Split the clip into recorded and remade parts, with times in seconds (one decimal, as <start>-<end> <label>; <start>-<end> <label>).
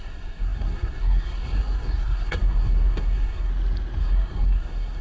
0.0-3.5 remade; 3.5-4.0 recorded; 4.0-5.0 remade